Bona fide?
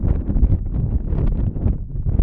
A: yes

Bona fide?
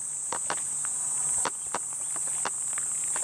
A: yes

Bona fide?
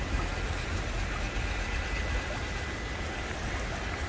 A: yes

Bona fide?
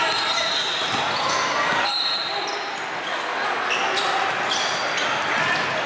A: yes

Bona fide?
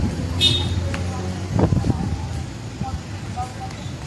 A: yes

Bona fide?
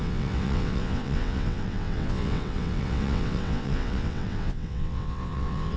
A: no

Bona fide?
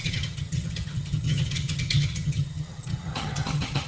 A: no